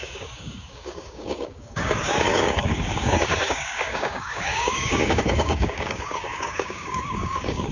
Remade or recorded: remade